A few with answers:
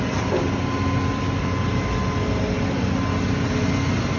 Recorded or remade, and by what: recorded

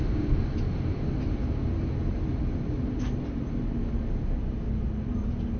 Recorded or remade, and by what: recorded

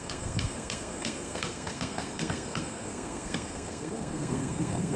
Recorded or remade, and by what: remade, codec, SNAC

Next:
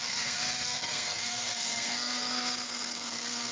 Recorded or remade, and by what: remade, codec, SNAC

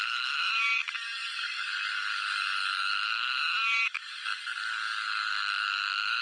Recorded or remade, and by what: remade, codec, DAC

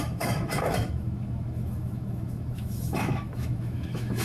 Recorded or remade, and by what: remade, autoencoder, DAC-VAE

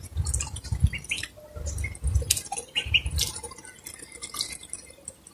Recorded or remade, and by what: recorded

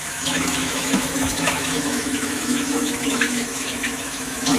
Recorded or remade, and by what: remade, autoencoder, DAC-VAE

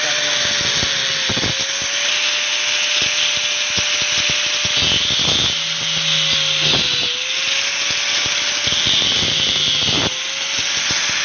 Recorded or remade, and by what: recorded